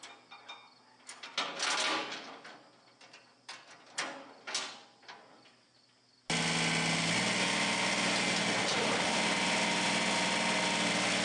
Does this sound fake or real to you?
real